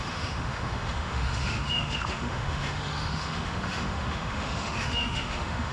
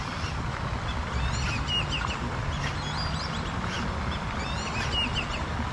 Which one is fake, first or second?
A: first